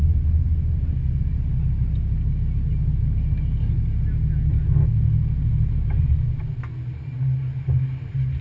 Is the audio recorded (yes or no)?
yes